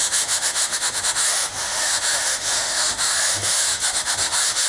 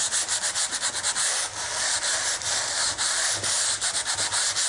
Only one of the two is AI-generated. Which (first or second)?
first